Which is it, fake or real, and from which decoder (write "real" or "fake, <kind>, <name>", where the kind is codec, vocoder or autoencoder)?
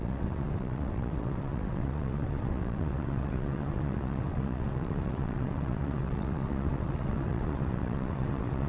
fake, vocoder, WaveNeXt